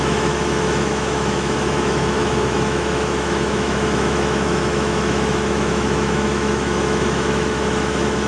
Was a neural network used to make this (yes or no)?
yes